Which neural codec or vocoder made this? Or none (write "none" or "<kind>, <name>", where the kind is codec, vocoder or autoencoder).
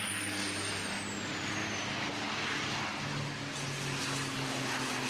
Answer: none